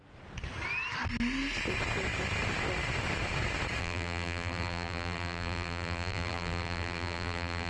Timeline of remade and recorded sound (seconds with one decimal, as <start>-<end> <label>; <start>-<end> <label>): 0.0-3.8 recorded; 3.8-7.7 remade